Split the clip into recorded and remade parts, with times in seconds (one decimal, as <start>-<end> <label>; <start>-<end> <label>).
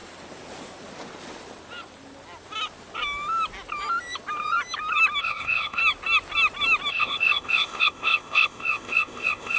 0.0-5.2 recorded; 5.2-5.8 remade; 5.8-6.9 recorded; 6.9-9.6 remade